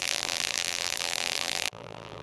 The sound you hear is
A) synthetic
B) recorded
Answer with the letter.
A